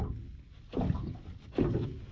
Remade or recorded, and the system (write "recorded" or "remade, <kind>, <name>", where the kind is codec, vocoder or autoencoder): recorded